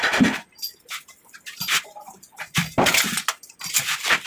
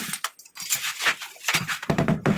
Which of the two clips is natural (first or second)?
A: second